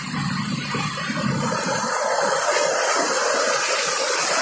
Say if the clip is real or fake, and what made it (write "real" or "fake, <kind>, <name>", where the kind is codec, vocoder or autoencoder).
real